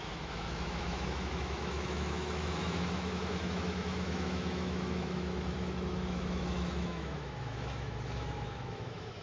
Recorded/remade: remade